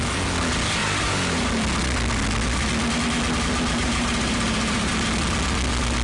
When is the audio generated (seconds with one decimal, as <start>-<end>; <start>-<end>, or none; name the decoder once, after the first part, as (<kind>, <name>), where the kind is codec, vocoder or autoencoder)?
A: 0.8-1.5 (vocoder, BigVGAN v2); 3.8-4.9